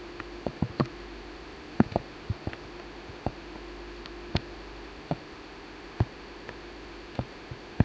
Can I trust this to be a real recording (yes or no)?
no